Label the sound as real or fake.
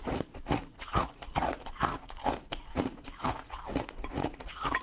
fake